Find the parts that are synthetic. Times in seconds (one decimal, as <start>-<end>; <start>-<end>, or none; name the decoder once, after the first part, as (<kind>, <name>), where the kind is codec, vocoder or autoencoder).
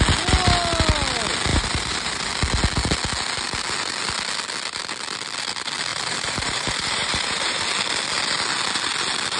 1.5-2.3 (vocoder, BigVGAN v2); 5.9-7.7